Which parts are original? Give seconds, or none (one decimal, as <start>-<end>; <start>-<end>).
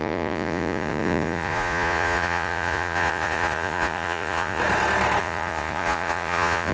4.6-5.2